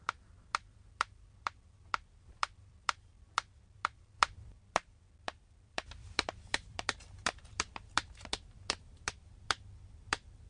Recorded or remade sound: remade